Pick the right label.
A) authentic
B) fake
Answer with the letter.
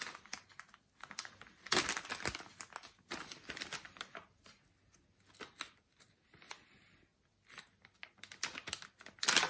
A